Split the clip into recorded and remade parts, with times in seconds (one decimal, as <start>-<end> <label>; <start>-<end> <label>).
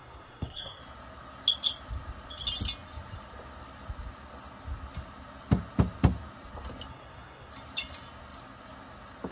0.0-0.8 remade; 0.8-6.9 recorded; 6.9-7.5 remade; 7.5-9.3 recorded